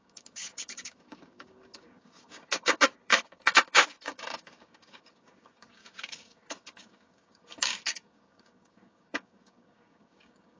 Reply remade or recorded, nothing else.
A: remade